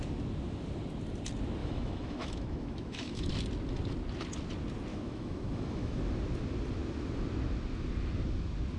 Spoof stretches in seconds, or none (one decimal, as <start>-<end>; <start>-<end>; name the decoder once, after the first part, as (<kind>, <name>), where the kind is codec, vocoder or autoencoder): 1.6-3.3 (autoencoder, DAC-VAE); 4.9-6.0